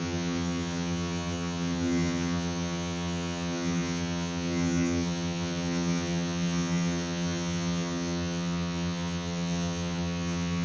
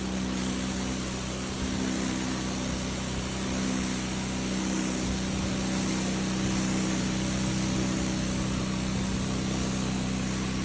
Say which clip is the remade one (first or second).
first